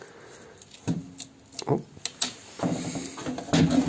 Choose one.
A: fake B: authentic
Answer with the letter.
B